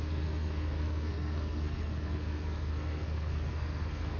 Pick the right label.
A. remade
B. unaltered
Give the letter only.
A